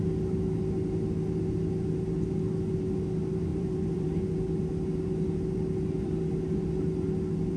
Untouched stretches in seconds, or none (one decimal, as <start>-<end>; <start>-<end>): 0.0-3.5; 4.2-7.6